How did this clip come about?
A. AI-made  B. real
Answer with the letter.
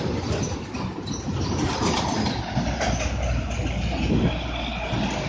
B